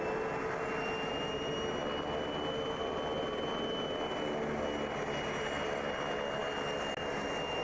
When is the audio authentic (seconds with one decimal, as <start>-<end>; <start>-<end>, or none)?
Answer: 0.0-7.6